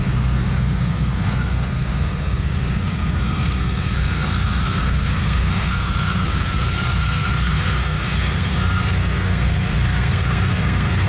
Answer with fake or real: fake